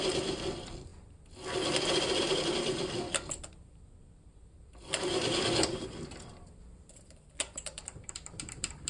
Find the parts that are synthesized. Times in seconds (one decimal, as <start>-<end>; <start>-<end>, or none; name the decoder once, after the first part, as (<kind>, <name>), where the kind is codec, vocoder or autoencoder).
0.0-0.9 (vocoder, BigVGAN v2); 2.2-8.9